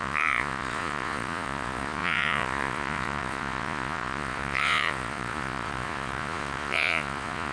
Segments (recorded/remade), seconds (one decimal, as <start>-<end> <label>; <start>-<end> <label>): 0.0-7.5 remade